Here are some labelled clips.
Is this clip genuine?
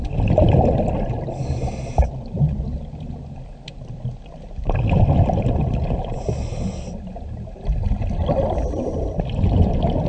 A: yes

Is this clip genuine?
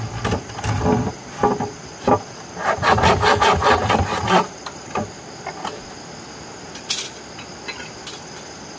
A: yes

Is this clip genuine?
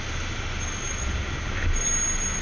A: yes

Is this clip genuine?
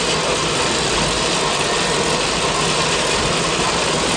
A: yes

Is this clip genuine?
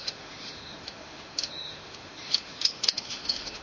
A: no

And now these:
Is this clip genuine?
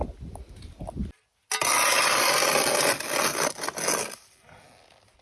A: yes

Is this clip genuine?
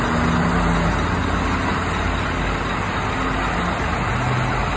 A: yes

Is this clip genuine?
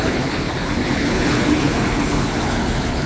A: no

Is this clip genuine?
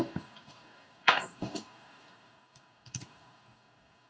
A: no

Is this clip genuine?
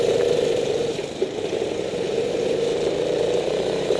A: no